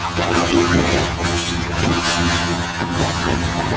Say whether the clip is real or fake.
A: fake